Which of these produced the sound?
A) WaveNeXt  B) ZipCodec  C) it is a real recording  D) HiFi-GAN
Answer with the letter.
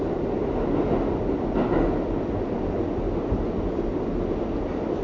C